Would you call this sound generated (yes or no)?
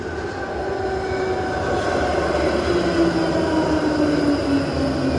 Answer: no